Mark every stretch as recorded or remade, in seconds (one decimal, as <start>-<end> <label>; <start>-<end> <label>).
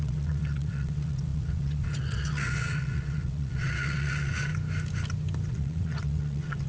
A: 0.0-4.5 remade; 4.5-5.5 recorded; 5.5-6.7 remade